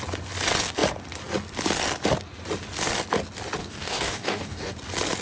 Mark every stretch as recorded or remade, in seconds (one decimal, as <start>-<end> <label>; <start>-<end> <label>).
0.0-3.6 recorded; 3.6-4.7 remade; 4.7-5.2 recorded